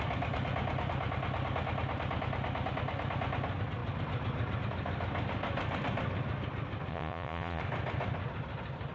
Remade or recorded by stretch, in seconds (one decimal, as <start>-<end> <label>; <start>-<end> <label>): 0.0-6.9 recorded; 6.9-7.6 remade; 7.6-8.9 recorded